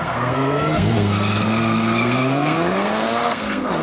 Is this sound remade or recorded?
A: remade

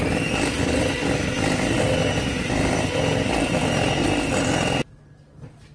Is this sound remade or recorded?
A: recorded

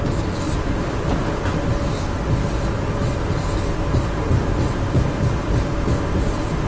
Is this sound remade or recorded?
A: recorded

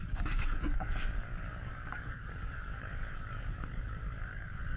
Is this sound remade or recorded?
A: remade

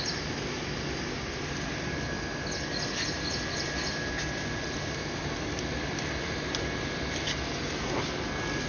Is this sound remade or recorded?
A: recorded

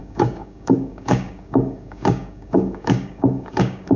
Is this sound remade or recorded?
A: remade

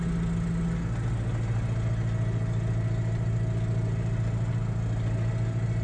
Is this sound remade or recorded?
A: recorded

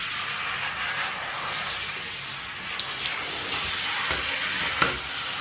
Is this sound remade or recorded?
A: recorded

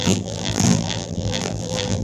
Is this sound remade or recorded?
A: remade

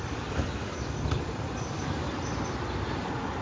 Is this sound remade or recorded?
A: remade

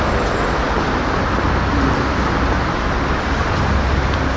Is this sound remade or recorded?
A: recorded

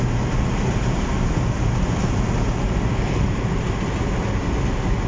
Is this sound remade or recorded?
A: recorded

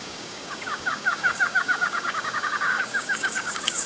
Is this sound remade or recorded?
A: remade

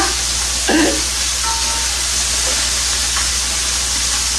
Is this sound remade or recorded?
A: recorded